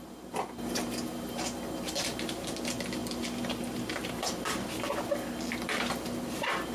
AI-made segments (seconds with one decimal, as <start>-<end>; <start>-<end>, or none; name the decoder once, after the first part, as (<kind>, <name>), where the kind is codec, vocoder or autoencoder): none